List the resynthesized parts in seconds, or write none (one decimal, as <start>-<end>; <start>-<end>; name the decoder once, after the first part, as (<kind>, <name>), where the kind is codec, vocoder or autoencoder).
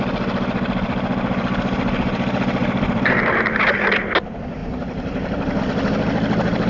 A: 2.6-3.6 (vocoder, BigVGAN v2); 4.6-5.6